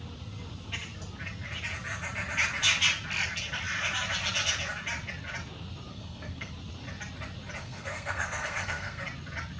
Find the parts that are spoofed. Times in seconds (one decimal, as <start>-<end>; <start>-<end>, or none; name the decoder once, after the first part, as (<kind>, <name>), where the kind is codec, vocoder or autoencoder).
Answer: 5.9-6.5 (codec, SNAC); 7.6-9.0